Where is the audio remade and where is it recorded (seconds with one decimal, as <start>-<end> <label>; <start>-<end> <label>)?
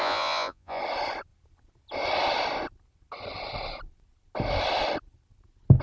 0.0-0.8 remade; 0.8-5.8 recorded